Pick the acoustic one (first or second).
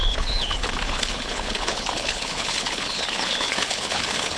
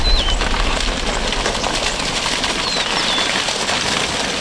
second